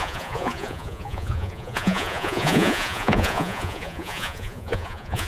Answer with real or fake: fake